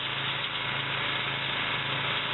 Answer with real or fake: real